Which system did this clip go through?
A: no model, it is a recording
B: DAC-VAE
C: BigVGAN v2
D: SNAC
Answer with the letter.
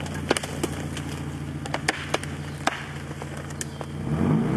A